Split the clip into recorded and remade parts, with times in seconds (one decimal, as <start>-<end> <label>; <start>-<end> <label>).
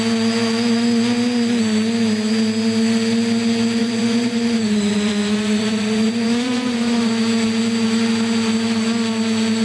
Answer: 0.0-3.8 recorded; 3.8-7.1 remade; 7.1-9.6 recorded